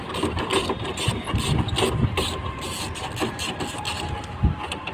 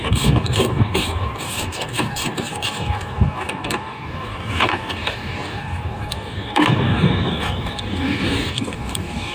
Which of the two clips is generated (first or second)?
second